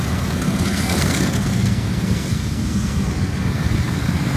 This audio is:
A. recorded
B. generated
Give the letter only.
B